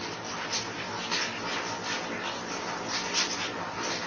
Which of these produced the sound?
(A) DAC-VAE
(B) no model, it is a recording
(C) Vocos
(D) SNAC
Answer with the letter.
B